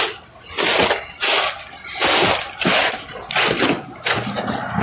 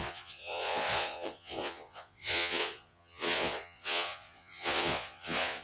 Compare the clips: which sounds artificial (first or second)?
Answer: second